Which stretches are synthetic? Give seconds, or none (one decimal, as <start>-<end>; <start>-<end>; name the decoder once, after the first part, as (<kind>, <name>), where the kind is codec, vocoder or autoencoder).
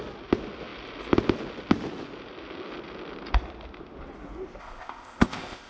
4.6-5.7 (codec, ZipCodec)